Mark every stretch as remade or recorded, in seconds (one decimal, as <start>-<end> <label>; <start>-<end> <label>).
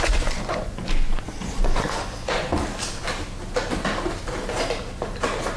0.0-2.5 remade; 2.5-5.6 recorded